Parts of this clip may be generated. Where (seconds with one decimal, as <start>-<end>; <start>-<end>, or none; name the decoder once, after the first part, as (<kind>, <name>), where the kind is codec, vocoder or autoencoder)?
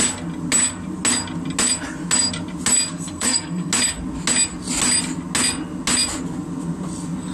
2.9-3.7 (codec, SNAC)